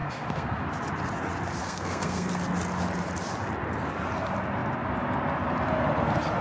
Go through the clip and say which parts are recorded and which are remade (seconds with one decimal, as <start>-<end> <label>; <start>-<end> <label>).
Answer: 0.0-0.6 remade; 0.6-1.6 recorded; 1.6-2.4 remade; 2.4-6.4 recorded